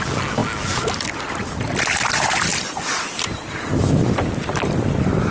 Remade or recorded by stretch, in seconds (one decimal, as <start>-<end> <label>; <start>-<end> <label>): 0.0-2.5 recorded; 2.5-5.3 remade

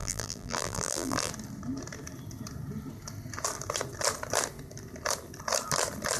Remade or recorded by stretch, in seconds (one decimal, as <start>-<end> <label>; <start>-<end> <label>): 0.0-1.3 remade; 1.3-6.2 recorded

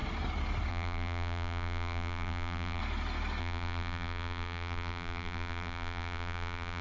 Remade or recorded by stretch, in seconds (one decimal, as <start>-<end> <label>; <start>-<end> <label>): 0.0-0.7 recorded; 0.7-2.8 remade; 2.8-3.4 recorded; 3.4-6.8 remade

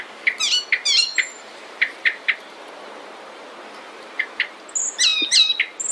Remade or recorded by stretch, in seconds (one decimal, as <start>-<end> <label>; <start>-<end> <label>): 0.0-1.1 recorded; 1.1-4.6 remade; 4.6-5.9 recorded

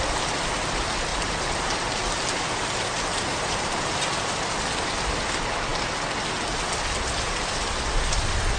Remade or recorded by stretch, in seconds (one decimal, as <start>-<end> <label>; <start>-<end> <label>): 0.0-1.1 recorded; 1.1-1.7 remade; 1.7-3.1 recorded; 3.1-4.0 remade; 4.0-8.6 recorded